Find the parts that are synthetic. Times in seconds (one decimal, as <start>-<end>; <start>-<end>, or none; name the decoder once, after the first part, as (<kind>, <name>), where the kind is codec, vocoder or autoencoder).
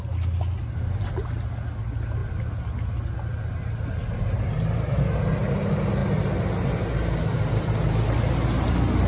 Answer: none